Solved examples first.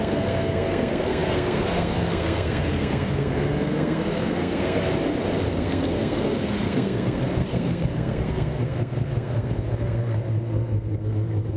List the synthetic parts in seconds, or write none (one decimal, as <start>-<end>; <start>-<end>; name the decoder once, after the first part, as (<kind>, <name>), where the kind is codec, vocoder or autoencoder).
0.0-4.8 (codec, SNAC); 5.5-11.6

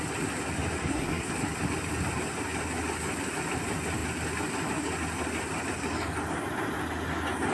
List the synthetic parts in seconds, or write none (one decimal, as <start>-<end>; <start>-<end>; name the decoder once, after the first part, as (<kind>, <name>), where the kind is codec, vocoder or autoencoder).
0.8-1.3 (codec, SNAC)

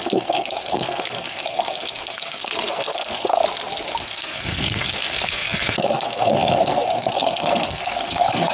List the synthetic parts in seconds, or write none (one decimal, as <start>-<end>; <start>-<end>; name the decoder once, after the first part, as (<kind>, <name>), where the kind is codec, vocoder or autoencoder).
0.0-3.4 (codec, SNAC); 4.0-8.5

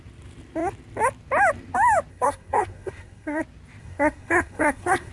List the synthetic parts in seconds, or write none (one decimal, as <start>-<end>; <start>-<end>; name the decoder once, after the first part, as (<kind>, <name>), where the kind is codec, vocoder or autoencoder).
2.1-3.4 (codec, SNAC); 3.8-5.1

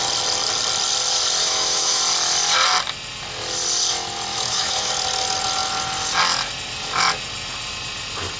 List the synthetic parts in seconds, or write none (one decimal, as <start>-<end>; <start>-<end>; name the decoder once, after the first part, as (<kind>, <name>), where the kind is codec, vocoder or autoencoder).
1.4-2.0 (autoencoder, DAC-VAE); 4.3-4.9

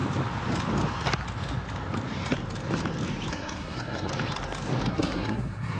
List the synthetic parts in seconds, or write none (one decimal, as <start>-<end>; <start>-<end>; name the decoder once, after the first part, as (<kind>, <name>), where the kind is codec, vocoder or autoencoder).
3.3-4.1 (codec, SNAC); 4.9-5.8

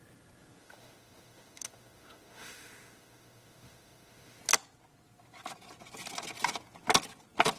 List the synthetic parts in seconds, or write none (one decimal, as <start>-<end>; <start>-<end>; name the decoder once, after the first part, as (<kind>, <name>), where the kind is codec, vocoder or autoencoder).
0.6-4.4 (autoencoder, DAC-VAE)